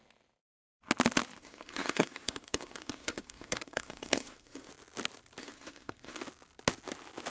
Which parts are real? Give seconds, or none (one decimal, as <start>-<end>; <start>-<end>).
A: 0.0-1.4; 4.7-5.4; 6.2-7.3